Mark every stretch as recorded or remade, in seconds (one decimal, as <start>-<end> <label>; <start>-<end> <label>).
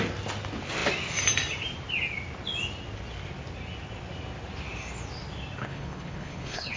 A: 0.0-5.6 recorded; 5.6-6.8 remade